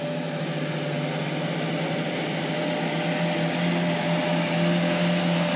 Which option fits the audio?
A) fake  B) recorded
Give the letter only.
B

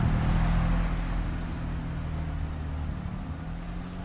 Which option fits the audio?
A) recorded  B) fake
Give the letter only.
A